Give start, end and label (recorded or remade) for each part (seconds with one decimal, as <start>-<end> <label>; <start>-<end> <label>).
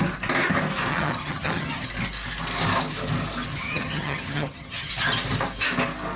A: 0.0-0.9 recorded; 0.9-1.9 remade; 1.9-3.5 recorded; 3.5-4.9 remade; 4.9-6.2 recorded